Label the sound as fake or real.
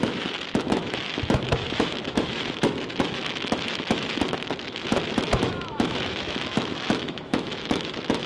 fake